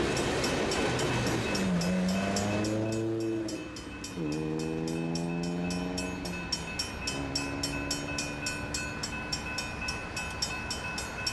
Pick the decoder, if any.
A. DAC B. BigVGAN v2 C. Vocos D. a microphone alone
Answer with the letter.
D